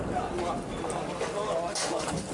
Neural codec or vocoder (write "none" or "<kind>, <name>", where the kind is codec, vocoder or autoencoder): none